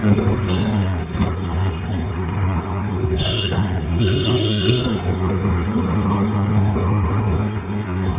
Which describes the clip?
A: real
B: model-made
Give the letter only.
B